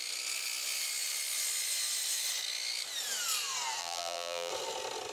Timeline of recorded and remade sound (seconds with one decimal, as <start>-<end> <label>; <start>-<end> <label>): 0.0-3.8 recorded; 3.8-4.5 remade; 4.5-5.1 recorded